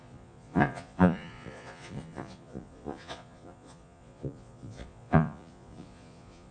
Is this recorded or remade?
remade